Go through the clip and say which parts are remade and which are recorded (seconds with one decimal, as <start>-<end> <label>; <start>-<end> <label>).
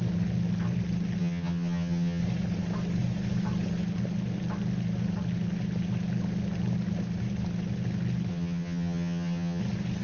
0.0-1.2 recorded; 1.2-2.2 remade; 2.2-8.3 recorded; 8.3-9.6 remade; 9.6-10.0 recorded